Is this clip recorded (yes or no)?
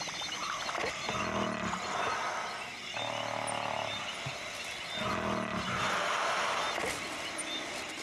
yes